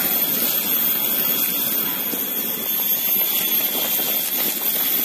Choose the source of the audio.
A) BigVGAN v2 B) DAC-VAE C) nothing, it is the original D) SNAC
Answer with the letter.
C